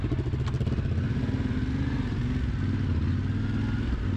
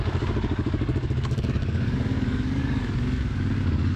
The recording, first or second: first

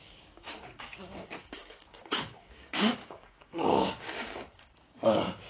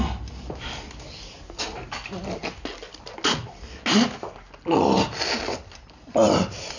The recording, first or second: second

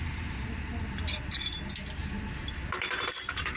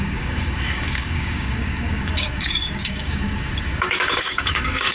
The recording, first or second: first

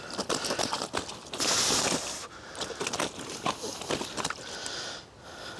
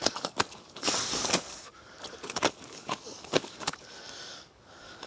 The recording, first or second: first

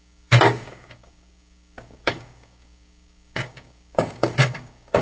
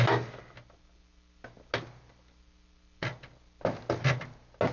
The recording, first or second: second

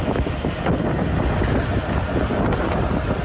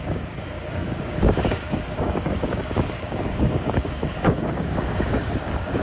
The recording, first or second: first